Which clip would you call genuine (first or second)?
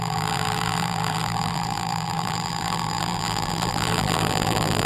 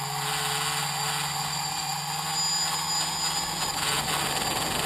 second